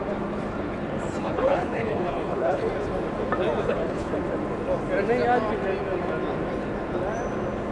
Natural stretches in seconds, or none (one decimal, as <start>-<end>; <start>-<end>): 0.0-1.2; 2.6-3.6; 4.1-7.7